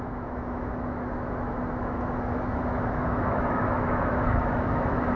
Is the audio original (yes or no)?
no